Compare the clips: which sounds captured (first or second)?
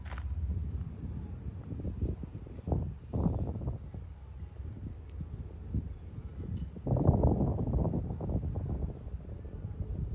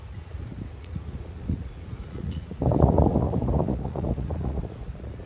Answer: first